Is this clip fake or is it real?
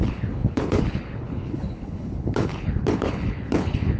fake